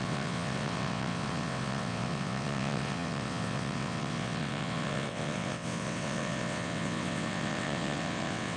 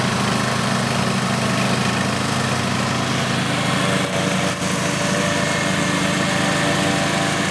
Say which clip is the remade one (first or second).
first